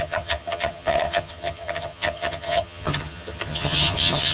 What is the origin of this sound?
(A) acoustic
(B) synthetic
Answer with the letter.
B